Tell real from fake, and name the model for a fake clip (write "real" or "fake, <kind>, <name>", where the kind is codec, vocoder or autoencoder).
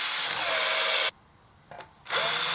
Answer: real